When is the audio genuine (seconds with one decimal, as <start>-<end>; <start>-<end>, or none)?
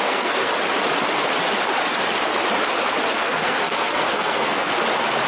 0.5-3.1; 4.7-5.3